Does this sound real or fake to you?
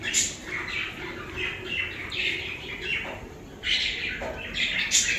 real